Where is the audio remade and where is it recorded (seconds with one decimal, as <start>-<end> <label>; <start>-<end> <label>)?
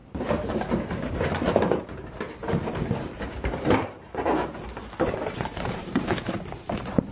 0.0-1.8 remade; 1.8-2.4 recorded; 2.4-7.1 remade